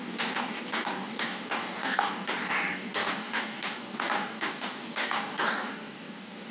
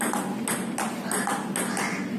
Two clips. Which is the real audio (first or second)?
second